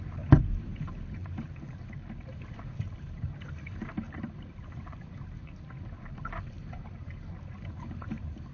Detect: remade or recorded remade